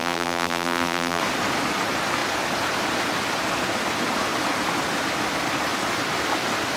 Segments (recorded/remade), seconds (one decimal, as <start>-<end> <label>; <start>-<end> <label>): 0.0-1.2 remade; 1.2-6.8 recorded